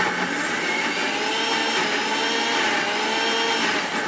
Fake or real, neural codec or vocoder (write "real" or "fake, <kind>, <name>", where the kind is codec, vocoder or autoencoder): real